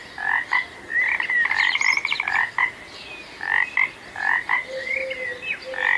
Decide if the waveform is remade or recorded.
recorded